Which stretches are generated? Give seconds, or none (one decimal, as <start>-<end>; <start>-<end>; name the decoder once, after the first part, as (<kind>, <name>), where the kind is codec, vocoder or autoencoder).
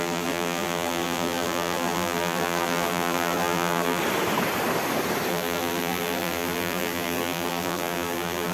0.0-4.0 (vocoder, BigVGAN v2); 5.3-8.5